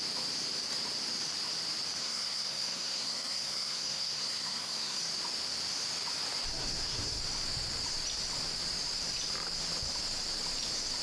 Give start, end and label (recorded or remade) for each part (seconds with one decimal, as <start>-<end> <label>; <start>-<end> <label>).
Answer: 0.0-2.0 recorded; 2.0-5.0 remade; 5.0-6.5 recorded; 6.5-7.2 remade; 7.2-11.0 recorded